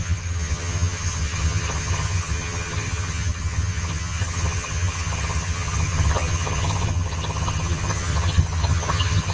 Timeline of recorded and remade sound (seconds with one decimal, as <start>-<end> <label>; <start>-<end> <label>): 0.0-9.3 remade